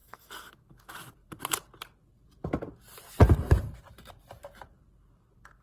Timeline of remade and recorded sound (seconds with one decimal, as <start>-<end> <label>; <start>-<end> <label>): 0.0-0.5 remade; 0.5-5.6 recorded